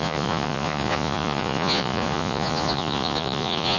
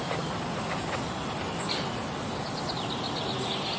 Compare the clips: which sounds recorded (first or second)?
second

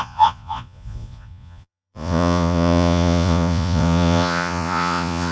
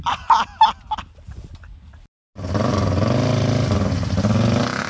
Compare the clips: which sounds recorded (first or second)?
second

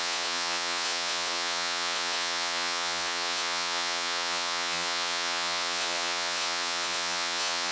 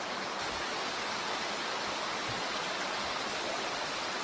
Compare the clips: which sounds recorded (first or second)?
second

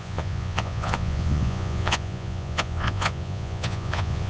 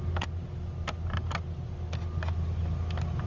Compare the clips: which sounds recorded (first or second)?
second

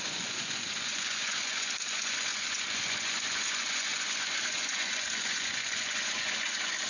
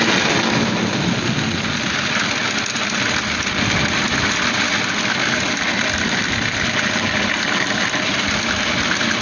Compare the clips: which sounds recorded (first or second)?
second